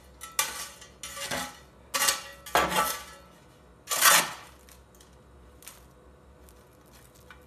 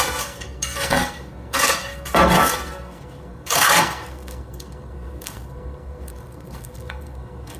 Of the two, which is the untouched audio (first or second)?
first